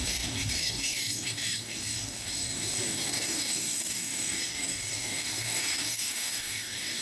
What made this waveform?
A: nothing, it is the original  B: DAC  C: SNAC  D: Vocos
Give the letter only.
B